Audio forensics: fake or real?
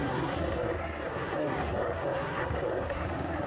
fake